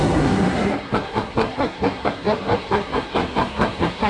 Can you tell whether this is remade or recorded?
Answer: remade